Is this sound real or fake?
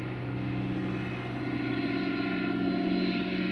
real